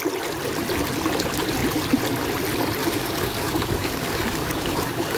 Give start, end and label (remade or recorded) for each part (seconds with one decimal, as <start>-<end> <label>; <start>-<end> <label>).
0.0-2.8 recorded; 2.8-5.2 remade